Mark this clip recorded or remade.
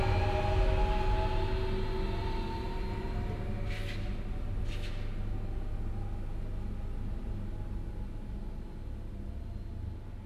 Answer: recorded